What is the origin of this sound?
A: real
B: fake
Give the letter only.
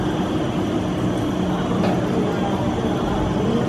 A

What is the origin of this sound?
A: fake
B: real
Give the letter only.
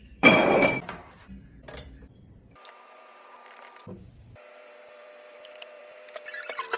A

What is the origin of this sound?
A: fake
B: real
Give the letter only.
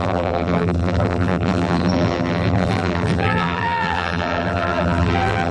A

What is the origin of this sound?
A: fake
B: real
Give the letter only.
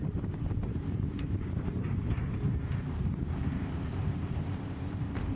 A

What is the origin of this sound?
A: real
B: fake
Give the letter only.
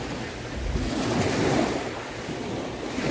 A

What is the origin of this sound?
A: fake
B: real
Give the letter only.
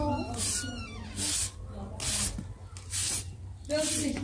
B